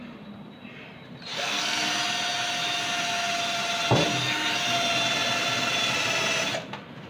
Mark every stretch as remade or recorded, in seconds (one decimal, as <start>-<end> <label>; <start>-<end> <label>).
0.0-1.3 recorded; 1.3-1.9 remade; 1.9-7.1 recorded